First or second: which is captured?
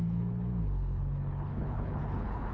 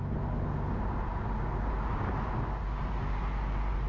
second